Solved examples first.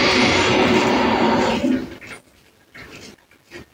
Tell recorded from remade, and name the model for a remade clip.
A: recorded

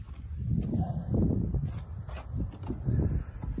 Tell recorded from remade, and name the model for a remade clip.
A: recorded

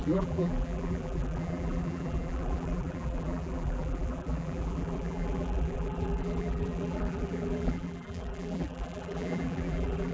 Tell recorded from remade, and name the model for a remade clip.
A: remade, vocoder, BigVGAN v2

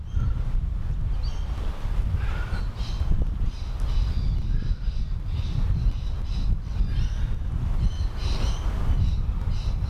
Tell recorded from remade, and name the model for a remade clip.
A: recorded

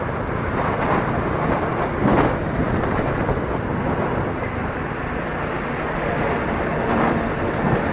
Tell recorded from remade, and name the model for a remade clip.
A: recorded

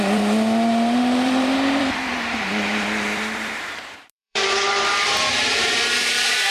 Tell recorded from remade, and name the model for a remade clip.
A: remade, vocoder, BigVGAN v2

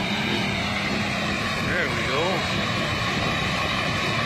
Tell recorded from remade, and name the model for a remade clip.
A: remade, vocoder, BigVGAN v2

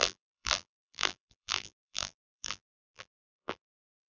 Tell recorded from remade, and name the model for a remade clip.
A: remade, vocoder, BigVGAN v2